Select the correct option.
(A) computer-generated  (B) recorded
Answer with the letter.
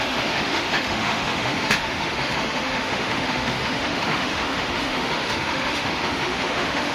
A